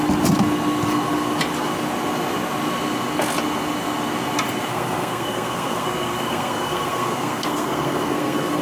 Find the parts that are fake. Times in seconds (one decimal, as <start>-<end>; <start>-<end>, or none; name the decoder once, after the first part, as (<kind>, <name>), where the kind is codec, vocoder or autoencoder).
4.7-8.6 (codec, SNAC)